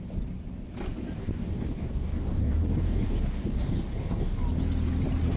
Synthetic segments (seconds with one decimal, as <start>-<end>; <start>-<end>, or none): 1.2-4.4